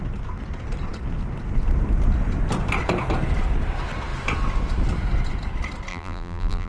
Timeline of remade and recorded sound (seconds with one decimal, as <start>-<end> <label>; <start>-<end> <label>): 0.0-5.9 recorded; 5.9-6.7 remade